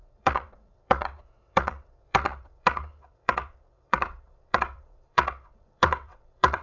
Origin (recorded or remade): remade